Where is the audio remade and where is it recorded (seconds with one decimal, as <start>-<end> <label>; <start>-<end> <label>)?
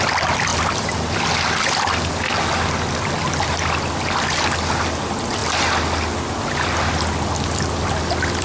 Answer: 0.0-8.4 recorded